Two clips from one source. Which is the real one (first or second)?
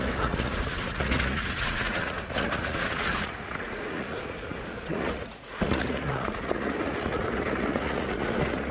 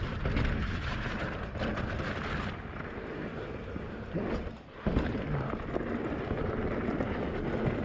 second